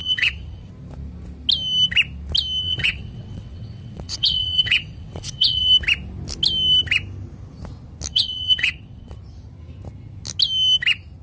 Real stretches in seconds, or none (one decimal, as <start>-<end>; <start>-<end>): 0.7-2.6; 5.7-8.1; 9.2-11.2